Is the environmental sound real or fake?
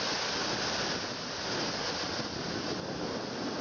real